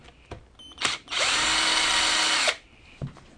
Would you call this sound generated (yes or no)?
no